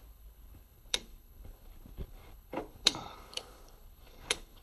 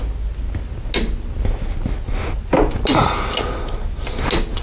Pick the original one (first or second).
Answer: second